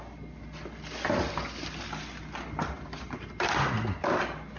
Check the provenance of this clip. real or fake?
real